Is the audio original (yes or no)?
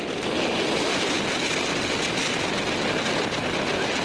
yes